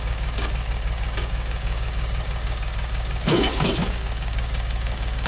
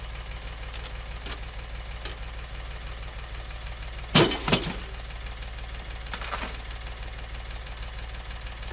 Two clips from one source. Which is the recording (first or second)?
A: second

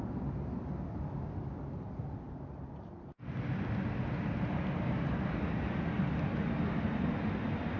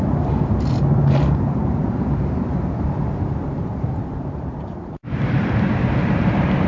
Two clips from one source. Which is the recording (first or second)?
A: first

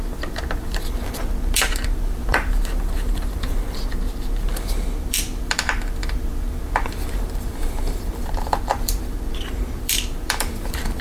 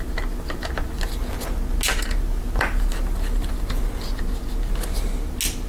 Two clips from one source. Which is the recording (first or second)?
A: second